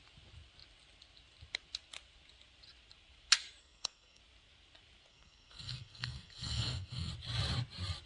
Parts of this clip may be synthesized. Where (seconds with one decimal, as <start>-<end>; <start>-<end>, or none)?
3.6-4.2; 5.1-7.1